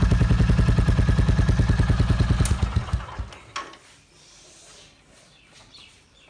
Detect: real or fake real